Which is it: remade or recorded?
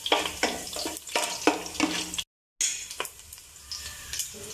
recorded